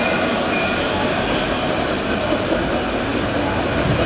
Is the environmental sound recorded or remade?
recorded